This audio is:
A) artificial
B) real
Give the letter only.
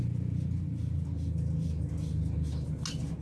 B